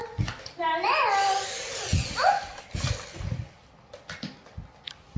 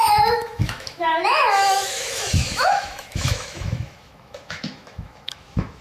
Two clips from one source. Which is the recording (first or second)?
first